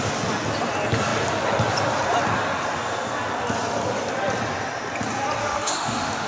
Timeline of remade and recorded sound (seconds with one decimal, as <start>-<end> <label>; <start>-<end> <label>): 0.0-5.4 recorded; 5.4-6.3 remade